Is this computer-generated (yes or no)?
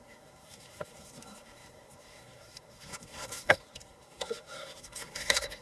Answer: yes